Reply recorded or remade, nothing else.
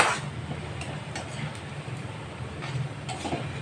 recorded